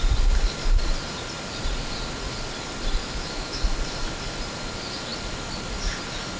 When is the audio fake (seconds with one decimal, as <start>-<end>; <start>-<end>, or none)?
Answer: 3.0-3.6